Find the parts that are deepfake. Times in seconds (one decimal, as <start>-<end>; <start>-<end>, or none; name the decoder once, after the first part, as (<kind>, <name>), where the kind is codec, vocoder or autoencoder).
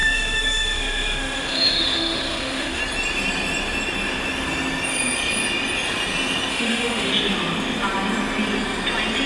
0.0-2.8 (autoencoder, DAC-VAE); 6.5-7.1